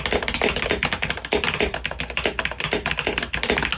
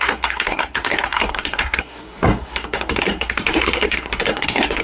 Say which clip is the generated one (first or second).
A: second